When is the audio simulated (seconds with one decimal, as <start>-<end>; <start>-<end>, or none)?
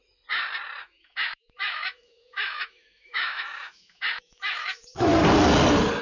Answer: 0.8-5.1